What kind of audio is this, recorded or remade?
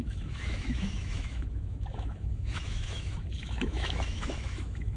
remade